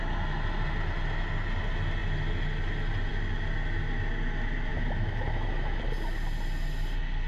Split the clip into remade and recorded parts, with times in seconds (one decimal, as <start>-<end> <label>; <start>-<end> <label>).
0.0-4.7 recorded; 4.7-5.8 remade; 5.8-7.3 recorded